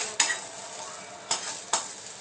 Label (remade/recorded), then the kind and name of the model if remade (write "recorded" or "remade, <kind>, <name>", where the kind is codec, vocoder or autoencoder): recorded